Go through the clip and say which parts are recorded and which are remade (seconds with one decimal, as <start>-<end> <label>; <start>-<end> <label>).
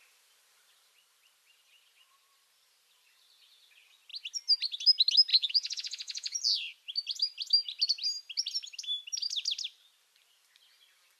0.0-5.3 recorded; 5.3-6.4 remade; 6.4-11.2 recorded